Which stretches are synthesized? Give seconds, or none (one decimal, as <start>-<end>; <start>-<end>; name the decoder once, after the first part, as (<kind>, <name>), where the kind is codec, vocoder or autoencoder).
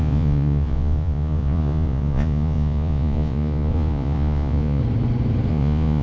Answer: 0.0-4.8 (vocoder, Vocos); 5.5-6.0